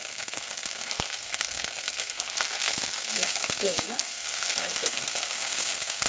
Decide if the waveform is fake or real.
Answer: fake